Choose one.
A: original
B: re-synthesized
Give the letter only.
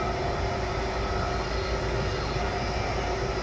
A